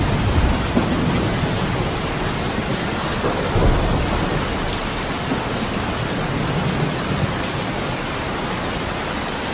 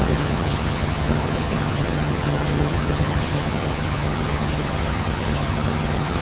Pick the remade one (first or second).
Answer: second